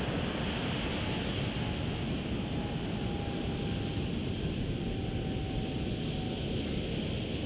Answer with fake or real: real